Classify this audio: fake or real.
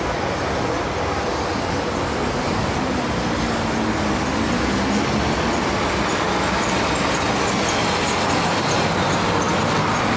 real